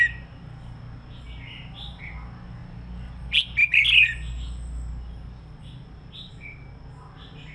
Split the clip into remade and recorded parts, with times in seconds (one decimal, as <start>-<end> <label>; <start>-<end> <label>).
0.0-7.5 recorded